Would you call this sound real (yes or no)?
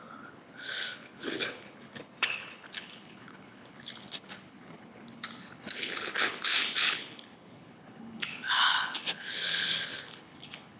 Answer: no